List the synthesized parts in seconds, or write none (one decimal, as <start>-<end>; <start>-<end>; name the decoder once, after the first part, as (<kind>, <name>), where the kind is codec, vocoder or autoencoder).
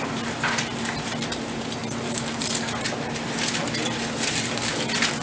none